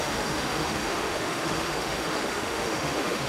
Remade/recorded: remade